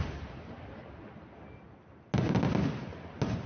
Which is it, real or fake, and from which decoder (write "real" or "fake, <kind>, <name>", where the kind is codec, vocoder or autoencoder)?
real